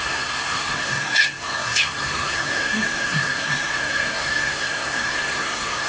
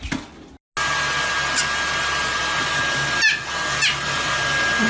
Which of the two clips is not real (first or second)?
first